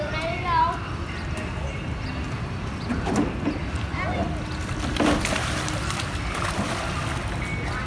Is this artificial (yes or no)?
no